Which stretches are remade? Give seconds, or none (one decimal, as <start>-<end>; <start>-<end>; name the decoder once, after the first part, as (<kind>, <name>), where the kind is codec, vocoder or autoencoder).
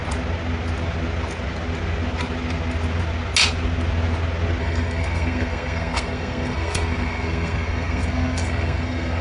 4.6-9.2 (codec, SNAC)